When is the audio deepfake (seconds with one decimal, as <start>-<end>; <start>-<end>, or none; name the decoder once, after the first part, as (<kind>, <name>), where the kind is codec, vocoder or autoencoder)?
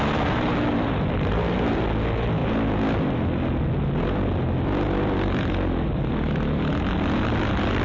0.7-1.8 (vocoder, BigVGAN v2)